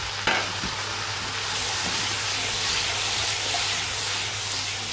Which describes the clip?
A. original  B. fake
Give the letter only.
A